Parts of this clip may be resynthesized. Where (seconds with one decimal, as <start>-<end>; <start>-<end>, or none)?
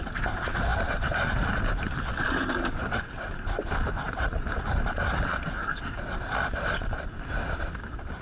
0.7-2.1; 2.8-4.6; 5.3-6.0